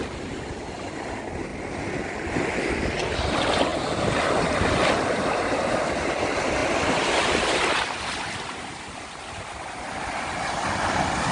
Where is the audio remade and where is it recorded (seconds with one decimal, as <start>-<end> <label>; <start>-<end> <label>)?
0.0-11.3 recorded